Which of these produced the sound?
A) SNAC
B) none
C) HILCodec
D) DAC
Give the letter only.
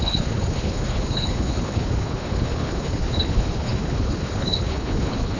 C